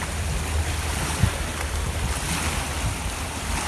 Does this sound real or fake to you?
real